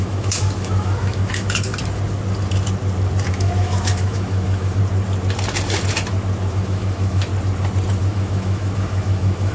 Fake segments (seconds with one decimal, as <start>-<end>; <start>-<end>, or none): 0.0-1.7; 3.3-4.8; 6.5-7.3; 7.9-9.5